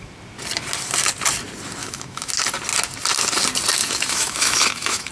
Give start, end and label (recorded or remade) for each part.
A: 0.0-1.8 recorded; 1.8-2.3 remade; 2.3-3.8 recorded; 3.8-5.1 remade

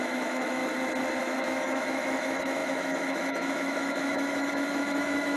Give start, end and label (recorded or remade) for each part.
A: 0.0-0.6 remade; 0.6-1.2 recorded; 1.2-5.4 remade

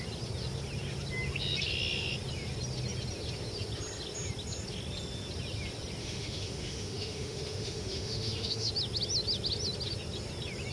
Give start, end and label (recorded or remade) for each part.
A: 0.0-6.0 recorded; 6.0-8.7 remade; 8.7-10.7 recorded